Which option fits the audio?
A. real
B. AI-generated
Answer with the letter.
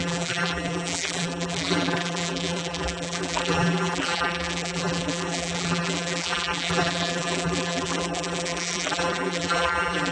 B